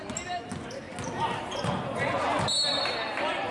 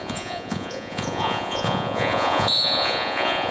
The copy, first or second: second